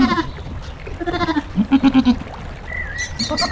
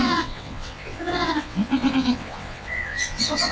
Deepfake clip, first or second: second